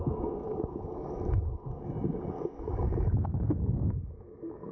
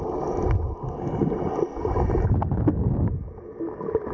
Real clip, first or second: second